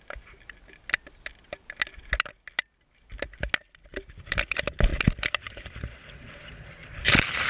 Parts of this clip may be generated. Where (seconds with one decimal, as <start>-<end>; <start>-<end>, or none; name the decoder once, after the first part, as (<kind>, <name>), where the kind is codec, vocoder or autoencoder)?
none